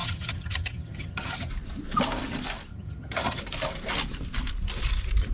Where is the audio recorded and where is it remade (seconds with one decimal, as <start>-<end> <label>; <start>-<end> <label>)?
0.0-1.5 remade; 1.5-2.7 recorded; 2.7-3.4 remade; 3.4-5.3 recorded